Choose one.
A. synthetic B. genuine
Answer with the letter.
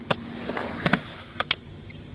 A